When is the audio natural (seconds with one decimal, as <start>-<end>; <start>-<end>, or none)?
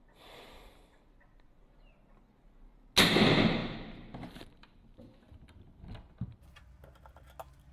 0.0-3.6; 5.6-7.7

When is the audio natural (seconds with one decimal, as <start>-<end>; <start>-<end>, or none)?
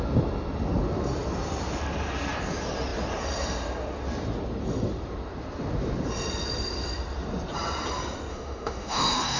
0.0-8.3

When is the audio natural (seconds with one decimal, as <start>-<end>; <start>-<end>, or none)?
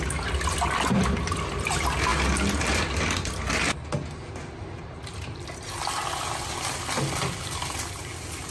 0.0-8.5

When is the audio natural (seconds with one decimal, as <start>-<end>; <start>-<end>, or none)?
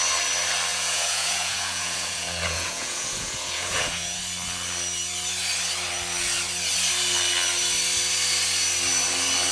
0.0-0.7; 4.2-9.5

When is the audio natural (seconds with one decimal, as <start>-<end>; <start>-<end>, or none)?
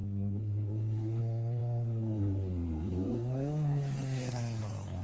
none